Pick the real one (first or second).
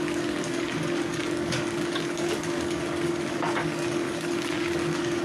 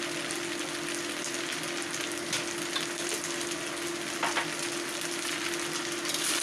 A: second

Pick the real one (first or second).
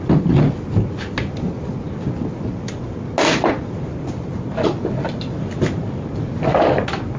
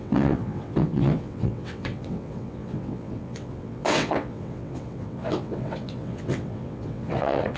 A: first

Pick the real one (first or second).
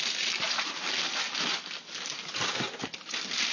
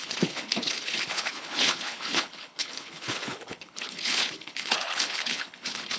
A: first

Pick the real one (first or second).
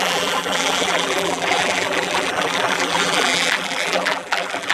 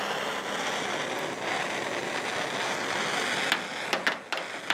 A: second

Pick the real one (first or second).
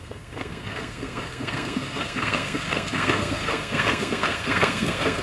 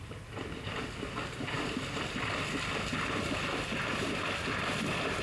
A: second